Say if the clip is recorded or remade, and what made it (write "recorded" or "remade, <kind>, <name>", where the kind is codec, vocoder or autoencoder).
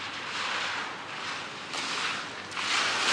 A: recorded